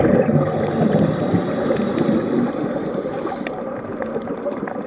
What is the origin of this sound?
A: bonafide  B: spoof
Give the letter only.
A